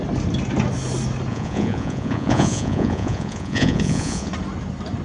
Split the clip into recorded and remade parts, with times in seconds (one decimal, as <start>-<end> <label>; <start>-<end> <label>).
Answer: 0.0-1.3 recorded; 1.3-4.3 remade; 4.3-5.0 recorded